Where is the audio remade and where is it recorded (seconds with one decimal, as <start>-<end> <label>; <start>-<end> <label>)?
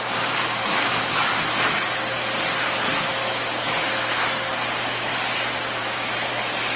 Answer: 0.0-0.6 recorded; 0.6-1.3 remade; 1.3-2.9 recorded; 2.9-4.1 remade; 4.1-5.8 recorded; 5.8-6.3 remade; 6.3-6.8 recorded